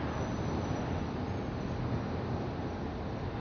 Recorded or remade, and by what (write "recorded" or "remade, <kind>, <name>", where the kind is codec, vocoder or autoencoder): recorded